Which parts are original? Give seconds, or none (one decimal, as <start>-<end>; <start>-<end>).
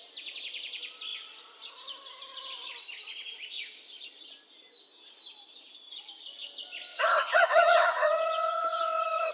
0.0-6.9